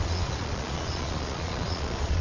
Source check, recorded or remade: remade